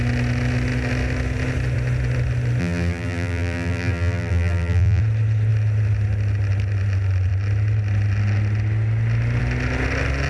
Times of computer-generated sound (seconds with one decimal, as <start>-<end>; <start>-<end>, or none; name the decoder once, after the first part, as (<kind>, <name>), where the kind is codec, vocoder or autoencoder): 2.6-5.0 (vocoder, BigVGAN v2)